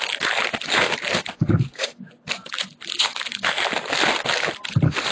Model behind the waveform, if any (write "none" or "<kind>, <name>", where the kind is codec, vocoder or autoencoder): none